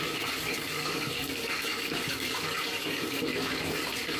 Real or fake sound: fake